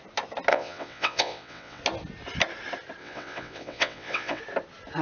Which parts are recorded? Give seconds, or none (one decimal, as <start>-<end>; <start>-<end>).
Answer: 0.0-0.5; 1.8-3.0; 4.4-5.0